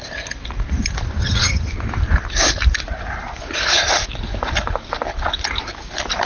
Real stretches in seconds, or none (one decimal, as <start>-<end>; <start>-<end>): 0.0-1.2; 1.7-6.3